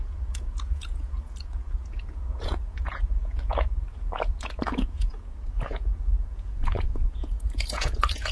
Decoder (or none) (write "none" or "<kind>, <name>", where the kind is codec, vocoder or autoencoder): vocoder, Vocos